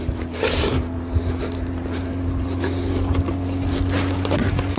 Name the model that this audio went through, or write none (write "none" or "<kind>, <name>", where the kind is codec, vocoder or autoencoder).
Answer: none